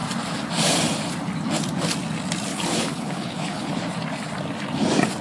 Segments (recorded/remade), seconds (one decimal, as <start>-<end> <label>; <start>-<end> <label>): 0.0-2.5 recorded; 2.5-3.8 remade; 3.8-5.2 recorded